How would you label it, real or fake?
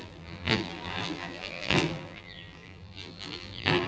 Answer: fake